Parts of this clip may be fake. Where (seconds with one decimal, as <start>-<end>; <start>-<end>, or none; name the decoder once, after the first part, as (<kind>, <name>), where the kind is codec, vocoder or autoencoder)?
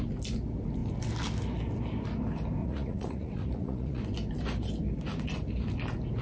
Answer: 2.6-4.0 (vocoder, Vocos)